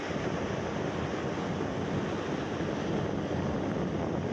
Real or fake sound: real